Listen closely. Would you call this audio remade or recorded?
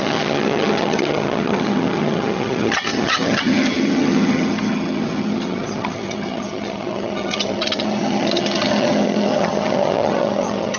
remade